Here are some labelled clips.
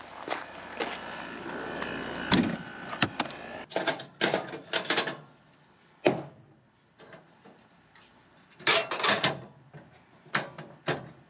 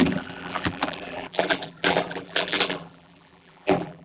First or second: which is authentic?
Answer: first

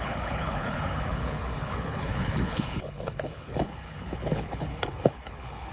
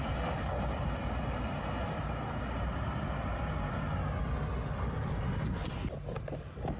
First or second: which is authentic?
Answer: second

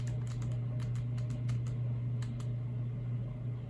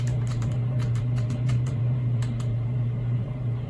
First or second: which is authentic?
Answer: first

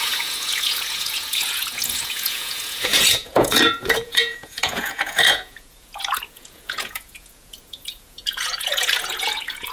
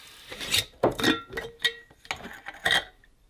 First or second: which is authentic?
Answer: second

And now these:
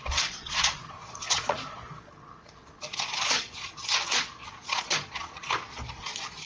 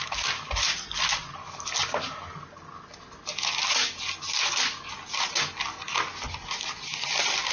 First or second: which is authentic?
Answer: second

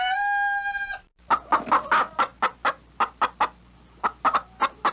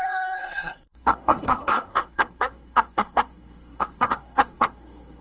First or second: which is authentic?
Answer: first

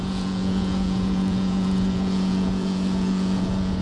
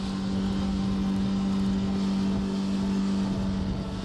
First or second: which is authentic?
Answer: second